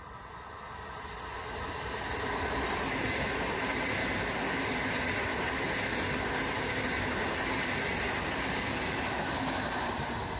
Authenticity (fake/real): real